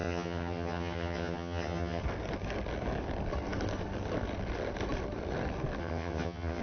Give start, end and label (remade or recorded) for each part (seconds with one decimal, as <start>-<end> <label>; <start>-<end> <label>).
0.0-2.0 remade; 2.0-5.8 recorded; 5.8-6.6 remade